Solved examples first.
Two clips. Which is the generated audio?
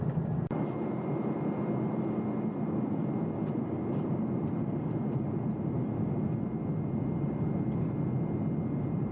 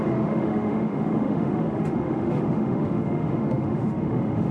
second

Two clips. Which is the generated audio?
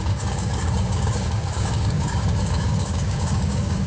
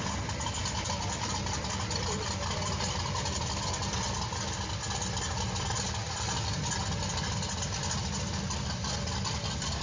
first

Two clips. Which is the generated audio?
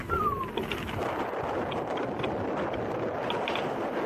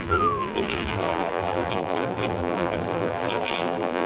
second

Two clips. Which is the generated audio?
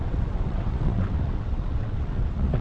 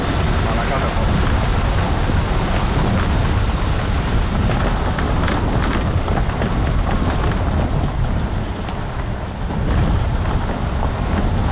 first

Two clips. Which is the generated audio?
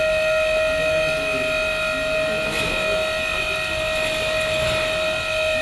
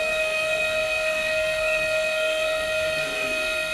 second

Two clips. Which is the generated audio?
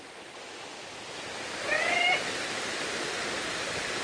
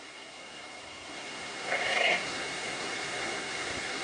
second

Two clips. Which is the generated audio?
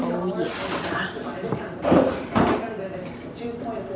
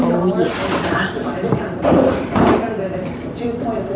second